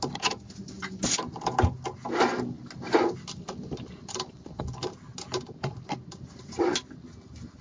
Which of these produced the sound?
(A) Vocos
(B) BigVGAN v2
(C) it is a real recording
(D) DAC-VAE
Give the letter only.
C